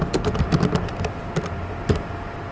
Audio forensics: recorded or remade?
recorded